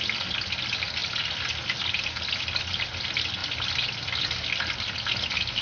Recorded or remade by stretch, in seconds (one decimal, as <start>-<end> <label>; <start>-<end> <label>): 0.0-5.6 recorded